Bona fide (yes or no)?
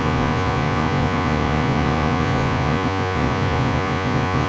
no